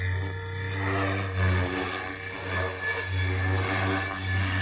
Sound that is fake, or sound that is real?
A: real